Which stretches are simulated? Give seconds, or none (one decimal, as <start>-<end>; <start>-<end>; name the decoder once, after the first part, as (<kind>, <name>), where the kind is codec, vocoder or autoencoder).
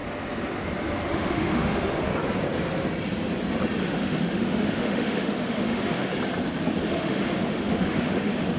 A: 1.1-2.1 (autoencoder, DAC-VAE); 3.8-6.1; 6.9-8.6